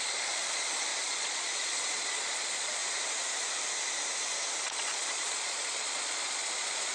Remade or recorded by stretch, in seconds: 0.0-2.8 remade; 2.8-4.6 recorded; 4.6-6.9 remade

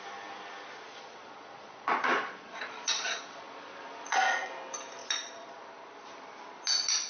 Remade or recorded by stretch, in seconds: 0.0-0.9 recorded; 0.9-4.5 remade; 4.5-5.0 recorded; 5.0-5.6 remade; 5.6-7.1 recorded

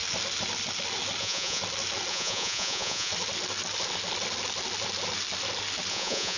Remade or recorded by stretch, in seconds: 0.0-1.2 recorded; 1.2-1.6 remade; 1.6-2.1 recorded; 2.1-3.1 remade; 3.1-5.9 recorded; 5.9-6.4 remade

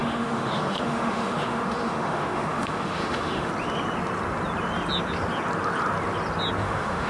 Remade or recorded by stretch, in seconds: 0.0-3.5 remade; 3.5-6.6 recorded; 6.6-7.1 remade